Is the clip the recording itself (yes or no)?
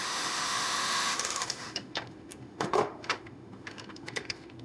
no